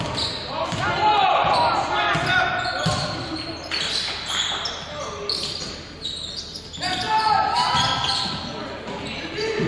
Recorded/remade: recorded